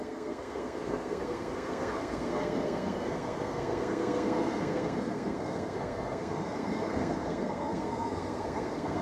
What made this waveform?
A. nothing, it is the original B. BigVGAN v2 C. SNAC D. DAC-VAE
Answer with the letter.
C